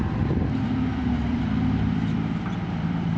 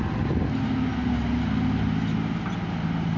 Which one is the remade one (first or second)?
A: first